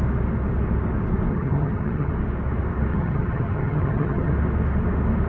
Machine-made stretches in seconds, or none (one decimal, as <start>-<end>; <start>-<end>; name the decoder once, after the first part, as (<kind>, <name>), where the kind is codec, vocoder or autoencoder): 1.3-2.1 (vocoder, HiFi-GAN); 2.9-4.3